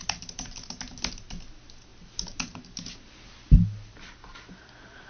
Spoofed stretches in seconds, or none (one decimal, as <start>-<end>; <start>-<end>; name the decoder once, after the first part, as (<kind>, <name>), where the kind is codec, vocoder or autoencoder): none